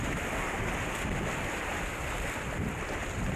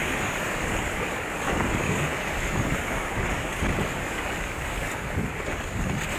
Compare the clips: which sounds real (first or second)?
first